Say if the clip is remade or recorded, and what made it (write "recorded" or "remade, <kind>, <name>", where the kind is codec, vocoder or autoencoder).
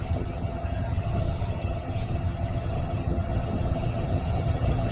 remade, vocoder, HiFi-GAN